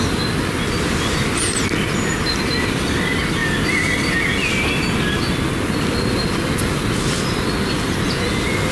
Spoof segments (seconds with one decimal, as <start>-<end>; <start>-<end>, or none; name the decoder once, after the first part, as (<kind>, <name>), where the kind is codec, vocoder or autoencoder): none